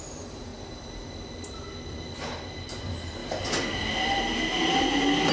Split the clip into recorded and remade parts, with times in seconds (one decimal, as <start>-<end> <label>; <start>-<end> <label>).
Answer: 0.0-5.3 recorded